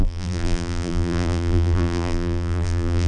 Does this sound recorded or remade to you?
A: remade